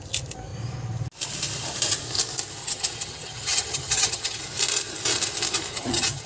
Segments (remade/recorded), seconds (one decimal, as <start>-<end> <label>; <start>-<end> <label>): 0.0-2.6 recorded; 2.6-4.4 remade; 4.4-5.7 recorded; 5.7-6.3 remade